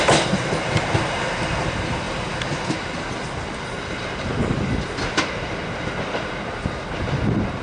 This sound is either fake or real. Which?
real